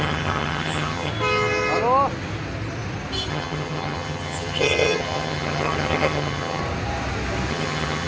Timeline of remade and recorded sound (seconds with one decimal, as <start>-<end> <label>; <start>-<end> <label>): 0.0-1.1 remade; 1.1-3.3 recorded; 3.3-6.6 remade; 6.6-7.5 recorded; 7.5-8.1 remade